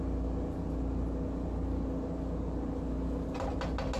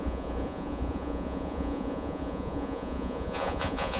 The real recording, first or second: first